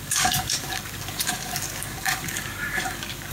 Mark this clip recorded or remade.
remade